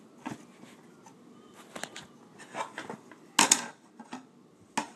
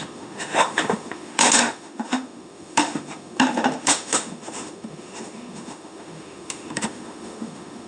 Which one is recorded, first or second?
first